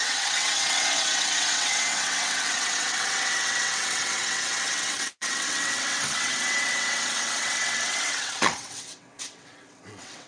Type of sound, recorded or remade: remade